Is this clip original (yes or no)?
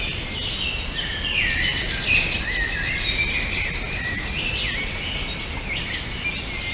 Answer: yes